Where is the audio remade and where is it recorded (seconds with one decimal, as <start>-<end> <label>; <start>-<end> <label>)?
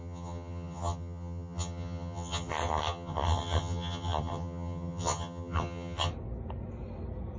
0.0-6.1 remade; 6.1-7.4 recorded